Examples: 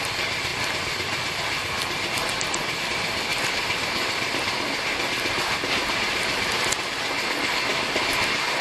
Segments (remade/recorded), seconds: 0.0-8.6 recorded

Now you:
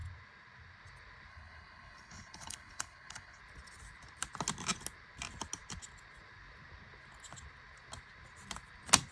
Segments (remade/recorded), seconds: 0.0-1.3 recorded; 1.3-3.4 remade; 3.4-9.1 recorded

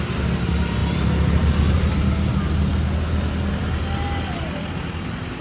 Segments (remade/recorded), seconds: 0.0-5.4 recorded

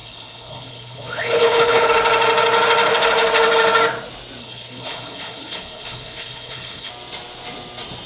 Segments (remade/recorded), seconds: 0.0-1.9 remade; 1.9-4.4 recorded; 4.4-6.9 remade; 6.9-8.1 recorded

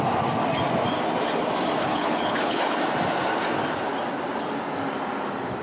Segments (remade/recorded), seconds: 0.0-1.8 recorded; 1.8-2.8 remade; 2.8-5.6 recorded